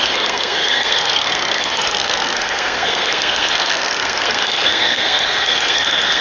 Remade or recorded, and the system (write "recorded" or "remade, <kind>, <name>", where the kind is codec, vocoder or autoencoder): remade, codec, SNAC